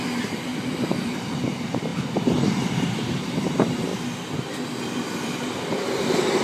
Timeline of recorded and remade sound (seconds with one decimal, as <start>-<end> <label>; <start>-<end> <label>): 0.0-6.4 remade